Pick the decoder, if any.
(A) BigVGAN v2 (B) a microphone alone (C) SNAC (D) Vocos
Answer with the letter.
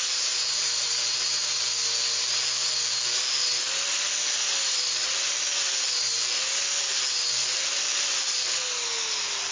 B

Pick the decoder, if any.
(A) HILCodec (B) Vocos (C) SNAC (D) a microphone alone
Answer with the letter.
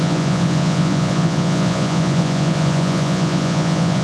B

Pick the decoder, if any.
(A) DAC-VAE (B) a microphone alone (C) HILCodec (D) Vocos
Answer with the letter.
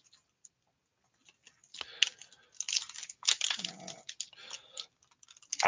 B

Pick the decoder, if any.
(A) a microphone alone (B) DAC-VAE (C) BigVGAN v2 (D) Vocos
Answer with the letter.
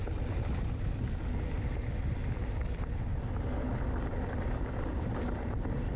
A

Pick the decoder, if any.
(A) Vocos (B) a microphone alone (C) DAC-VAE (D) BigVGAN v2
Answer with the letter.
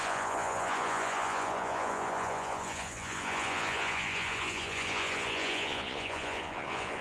A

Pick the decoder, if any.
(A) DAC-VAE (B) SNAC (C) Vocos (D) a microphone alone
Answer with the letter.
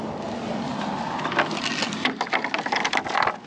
D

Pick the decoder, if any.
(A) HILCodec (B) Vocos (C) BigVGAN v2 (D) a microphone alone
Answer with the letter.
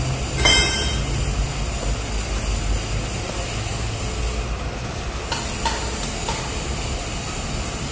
D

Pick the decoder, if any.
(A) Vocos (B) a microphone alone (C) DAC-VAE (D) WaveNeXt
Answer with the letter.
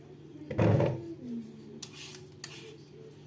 B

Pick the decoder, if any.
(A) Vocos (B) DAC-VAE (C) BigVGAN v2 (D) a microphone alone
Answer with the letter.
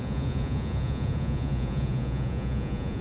A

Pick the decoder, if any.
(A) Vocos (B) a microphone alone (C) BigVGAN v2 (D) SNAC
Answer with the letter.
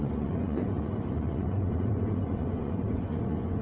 A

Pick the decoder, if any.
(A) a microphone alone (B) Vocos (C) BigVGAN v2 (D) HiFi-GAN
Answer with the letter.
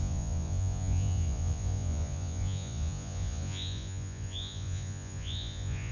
B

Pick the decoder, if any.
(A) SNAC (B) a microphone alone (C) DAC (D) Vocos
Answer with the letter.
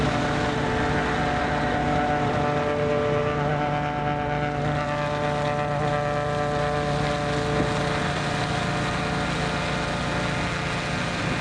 B